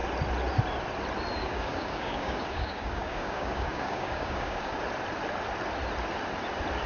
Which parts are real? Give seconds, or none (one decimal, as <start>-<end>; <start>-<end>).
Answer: 0.0-1.4; 4.8-6.9